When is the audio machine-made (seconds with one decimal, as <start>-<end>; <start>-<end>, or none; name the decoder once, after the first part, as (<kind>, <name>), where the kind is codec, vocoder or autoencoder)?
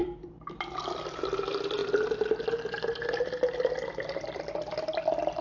0.0-1.2 (vocoder, BigVGAN v2); 1.8-5.0